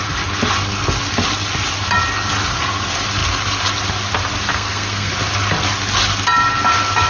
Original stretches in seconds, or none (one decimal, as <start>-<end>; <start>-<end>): 0.0-4.5; 5.1-7.1